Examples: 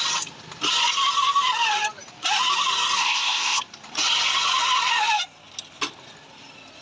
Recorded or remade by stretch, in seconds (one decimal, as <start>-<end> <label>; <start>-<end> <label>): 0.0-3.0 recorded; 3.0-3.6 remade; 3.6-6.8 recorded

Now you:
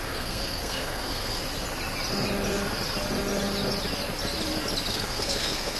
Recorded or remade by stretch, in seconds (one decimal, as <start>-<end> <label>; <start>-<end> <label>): 0.0-1.4 remade; 1.4-4.9 recorded; 4.9-5.8 remade

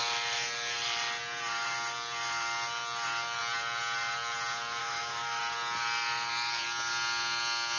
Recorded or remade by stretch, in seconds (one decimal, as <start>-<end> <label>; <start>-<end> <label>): 0.0-4.8 recorded; 4.8-5.4 remade; 5.4-7.8 recorded